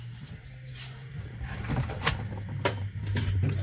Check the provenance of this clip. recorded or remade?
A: remade